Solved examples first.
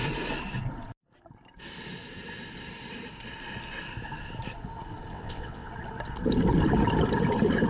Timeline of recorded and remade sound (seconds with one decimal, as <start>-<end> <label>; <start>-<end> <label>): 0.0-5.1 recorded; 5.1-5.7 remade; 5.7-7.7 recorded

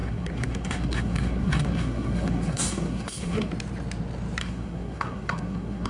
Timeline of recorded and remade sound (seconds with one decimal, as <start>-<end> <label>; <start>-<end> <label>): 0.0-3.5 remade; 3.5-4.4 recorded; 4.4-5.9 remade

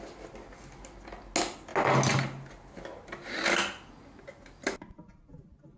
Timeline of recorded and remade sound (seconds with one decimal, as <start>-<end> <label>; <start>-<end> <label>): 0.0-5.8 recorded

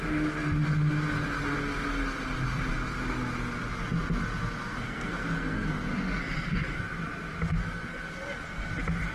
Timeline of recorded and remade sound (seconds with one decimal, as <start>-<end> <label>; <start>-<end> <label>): 0.0-4.7 recorded; 4.7-6.8 remade; 6.8-7.6 recorded; 7.6-8.7 remade; 8.7-9.1 recorded

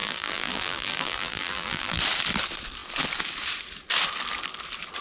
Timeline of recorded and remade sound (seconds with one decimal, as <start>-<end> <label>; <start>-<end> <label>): 0.0-2.0 remade; 2.0-5.0 recorded

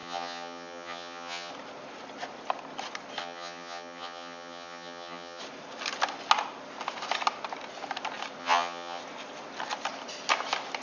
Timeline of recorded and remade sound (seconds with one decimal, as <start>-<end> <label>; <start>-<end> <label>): 0.0-1.5 remade; 1.5-3.2 recorded; 3.2-5.4 remade; 5.4-8.4 recorded; 8.4-9.0 remade; 9.0-10.8 recorded

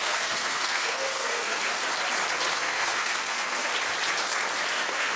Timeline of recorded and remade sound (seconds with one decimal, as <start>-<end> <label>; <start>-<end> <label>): 0.0-1.7 remade; 1.7-2.5 recorded; 2.5-3.7 remade; 3.7-4.7 recorded; 4.7-5.2 remade